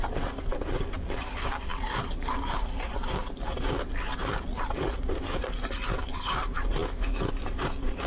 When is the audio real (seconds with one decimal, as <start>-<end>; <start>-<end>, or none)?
0.0-6.8; 7.3-8.1